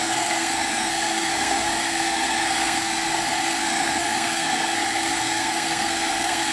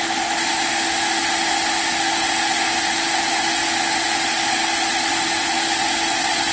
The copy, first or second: first